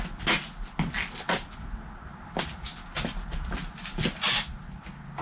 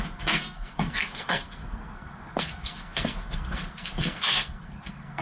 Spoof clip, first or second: second